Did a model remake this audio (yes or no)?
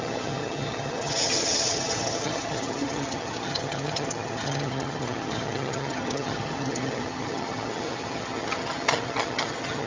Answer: yes